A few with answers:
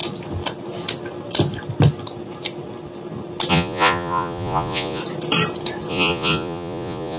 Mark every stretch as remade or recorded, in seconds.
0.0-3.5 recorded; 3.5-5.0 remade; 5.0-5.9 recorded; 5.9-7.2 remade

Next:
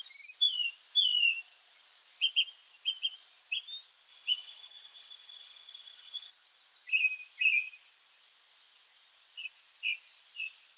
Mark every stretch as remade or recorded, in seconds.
0.0-4.1 recorded; 4.1-6.3 remade; 6.3-10.8 recorded

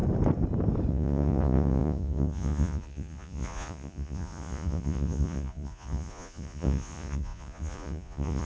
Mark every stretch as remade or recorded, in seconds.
0.0-0.9 recorded; 0.9-8.4 remade

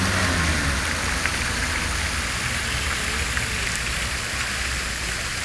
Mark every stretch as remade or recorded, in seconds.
0.0-5.4 recorded

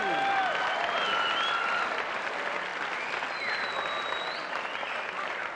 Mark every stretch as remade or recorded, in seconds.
0.0-5.6 recorded

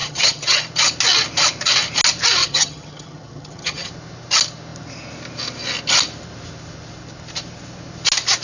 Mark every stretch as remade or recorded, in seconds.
0.0-0.6 remade; 0.6-2.4 recorded; 2.4-3.9 remade; 3.9-8.4 recorded

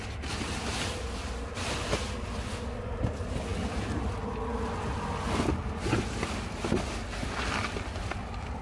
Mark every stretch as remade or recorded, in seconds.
0.0-8.6 recorded